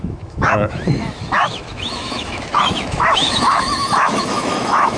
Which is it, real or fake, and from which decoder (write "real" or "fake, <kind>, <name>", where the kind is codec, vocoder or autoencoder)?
fake, autoencoder, DAC-VAE